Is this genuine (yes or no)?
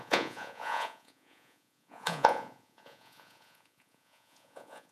no